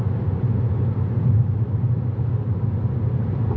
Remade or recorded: recorded